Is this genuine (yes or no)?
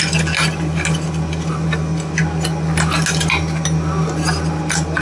yes